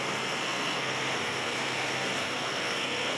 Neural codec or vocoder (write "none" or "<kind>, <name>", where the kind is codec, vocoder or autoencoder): codec, SNAC